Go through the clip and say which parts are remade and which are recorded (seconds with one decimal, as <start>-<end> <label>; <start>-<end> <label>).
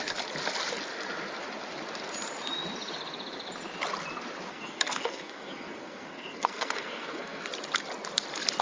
0.0-4.5 recorded; 4.5-7.4 remade; 7.4-8.6 recorded